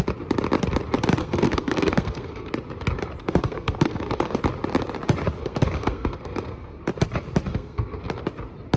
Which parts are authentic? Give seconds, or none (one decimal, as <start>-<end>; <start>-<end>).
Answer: 0.0-1.2; 2.5-3.2; 4.4-5.4; 6.8-7.5; 8.0-8.8